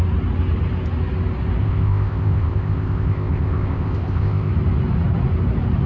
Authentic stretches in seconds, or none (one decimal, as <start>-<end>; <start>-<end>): 0.0-1.6; 4.5-5.9